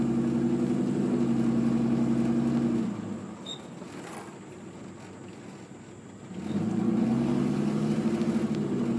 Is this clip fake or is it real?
real